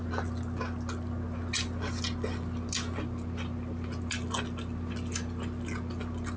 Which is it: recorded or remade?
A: recorded